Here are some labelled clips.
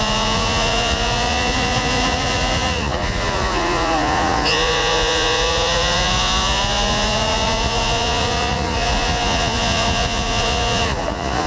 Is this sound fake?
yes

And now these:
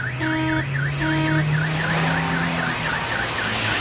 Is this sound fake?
no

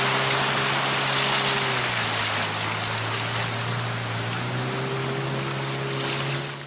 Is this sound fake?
no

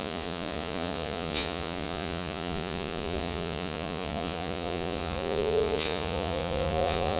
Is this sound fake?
yes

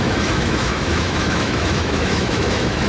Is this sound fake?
yes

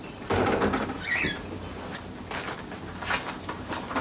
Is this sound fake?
no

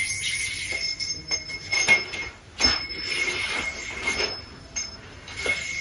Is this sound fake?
no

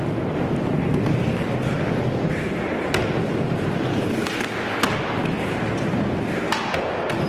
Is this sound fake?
no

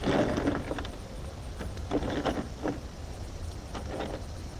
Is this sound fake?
no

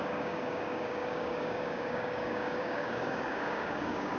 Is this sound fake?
yes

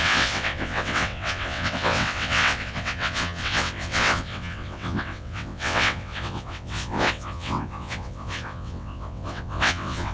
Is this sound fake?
yes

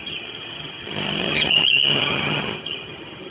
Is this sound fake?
yes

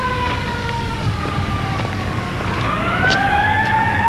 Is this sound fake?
yes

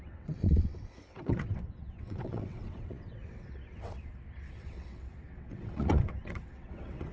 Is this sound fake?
yes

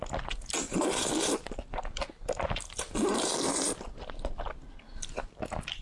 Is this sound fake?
no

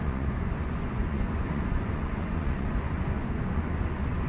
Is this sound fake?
yes